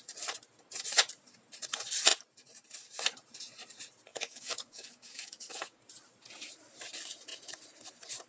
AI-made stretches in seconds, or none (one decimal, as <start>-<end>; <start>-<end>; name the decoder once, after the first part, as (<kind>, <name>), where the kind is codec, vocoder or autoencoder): 4.1-5.8 (codec, DAC)